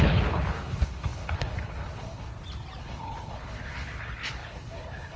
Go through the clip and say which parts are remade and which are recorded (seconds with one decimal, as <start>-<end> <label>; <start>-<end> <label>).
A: 0.0-2.3 remade; 2.3-2.8 recorded; 2.8-5.2 remade